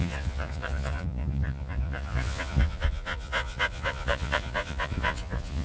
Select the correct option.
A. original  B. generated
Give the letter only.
B